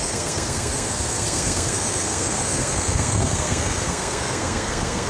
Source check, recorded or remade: remade